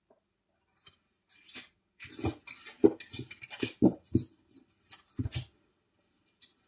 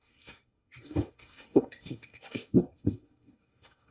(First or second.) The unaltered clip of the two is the first